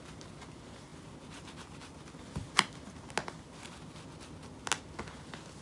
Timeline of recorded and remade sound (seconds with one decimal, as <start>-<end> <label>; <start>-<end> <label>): 0.0-5.6 recorded